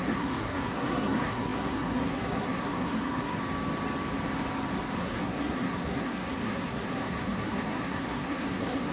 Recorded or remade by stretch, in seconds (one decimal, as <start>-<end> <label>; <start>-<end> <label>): 0.0-3.4 remade; 3.4-5.0 recorded; 5.0-8.9 remade